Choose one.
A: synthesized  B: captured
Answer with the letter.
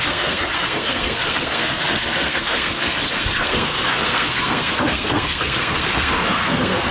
A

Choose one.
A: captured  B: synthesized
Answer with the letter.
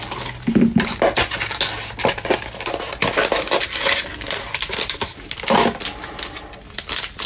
A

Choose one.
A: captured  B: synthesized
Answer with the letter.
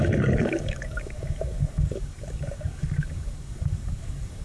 B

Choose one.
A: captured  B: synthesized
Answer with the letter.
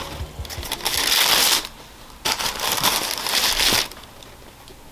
A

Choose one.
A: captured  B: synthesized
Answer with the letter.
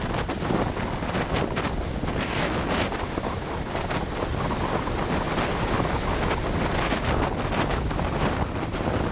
A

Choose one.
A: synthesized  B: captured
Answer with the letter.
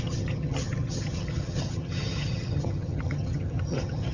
A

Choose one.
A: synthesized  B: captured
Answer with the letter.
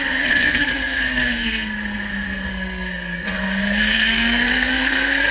A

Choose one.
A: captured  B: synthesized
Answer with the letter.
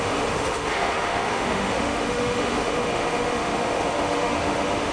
B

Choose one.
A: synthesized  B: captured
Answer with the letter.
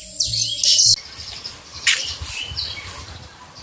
B